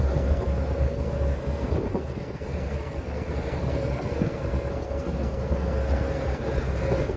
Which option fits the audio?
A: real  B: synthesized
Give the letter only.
B